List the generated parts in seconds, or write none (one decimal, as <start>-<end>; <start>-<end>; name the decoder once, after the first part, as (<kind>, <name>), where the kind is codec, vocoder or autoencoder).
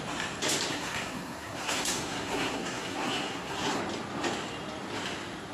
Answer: 0.7-3.8 (codec, SNAC)